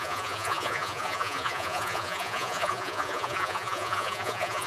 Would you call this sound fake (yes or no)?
yes